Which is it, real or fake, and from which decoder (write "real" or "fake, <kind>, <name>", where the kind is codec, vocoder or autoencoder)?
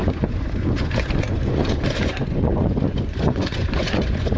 fake, vocoder, Vocos